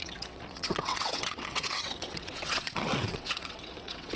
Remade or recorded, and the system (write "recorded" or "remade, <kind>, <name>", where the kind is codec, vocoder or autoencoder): remade, vocoder, WaveNeXt